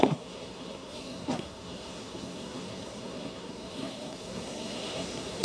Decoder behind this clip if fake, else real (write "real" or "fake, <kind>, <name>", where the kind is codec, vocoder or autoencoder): fake, codec, SNAC